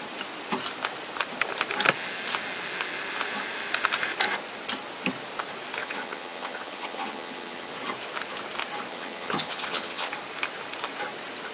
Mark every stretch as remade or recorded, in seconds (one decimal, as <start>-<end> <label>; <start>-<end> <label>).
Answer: 0.0-5.8 recorded; 5.8-7.7 remade; 7.7-8.9 recorded; 8.9-10.1 remade; 10.1-11.5 recorded